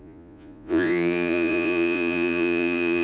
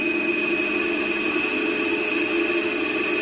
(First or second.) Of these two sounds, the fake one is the first